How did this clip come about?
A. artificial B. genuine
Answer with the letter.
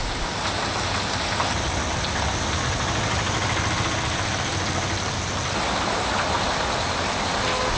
B